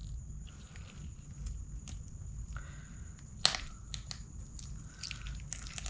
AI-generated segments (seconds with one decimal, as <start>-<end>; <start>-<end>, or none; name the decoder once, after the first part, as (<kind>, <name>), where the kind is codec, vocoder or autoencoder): none